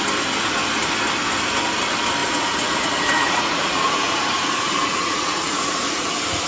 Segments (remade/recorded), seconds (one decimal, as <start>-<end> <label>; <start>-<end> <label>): 0.0-2.2 recorded; 2.2-6.1 remade; 6.1-6.5 recorded

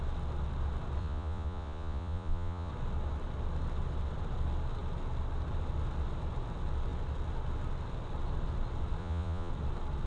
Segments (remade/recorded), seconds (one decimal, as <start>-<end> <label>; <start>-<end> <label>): 0.0-1.0 recorded; 1.0-2.7 remade; 2.7-9.0 recorded; 9.0-9.5 remade; 9.5-10.1 recorded

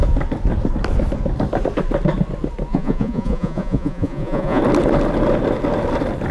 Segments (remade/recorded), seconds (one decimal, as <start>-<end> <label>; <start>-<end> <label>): 0.0-2.7 recorded; 2.7-4.6 remade; 4.6-6.3 recorded